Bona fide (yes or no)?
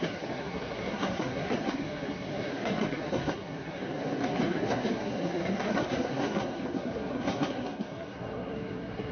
no